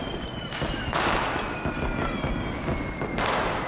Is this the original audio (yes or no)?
yes